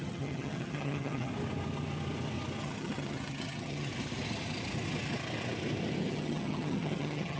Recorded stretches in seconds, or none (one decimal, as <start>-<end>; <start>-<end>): 1.3-2.6; 3.9-6.1